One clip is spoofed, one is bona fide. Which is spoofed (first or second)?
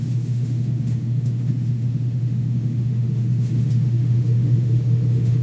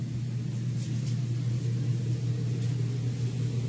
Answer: first